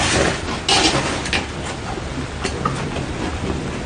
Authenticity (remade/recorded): recorded